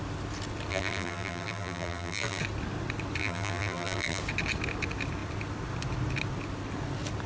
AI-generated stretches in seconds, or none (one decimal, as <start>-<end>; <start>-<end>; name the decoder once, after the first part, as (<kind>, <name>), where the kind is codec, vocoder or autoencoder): 0.7-2.4 (vocoder, BigVGAN v2); 3.2-4.2